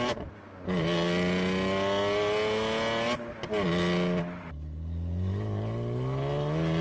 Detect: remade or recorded recorded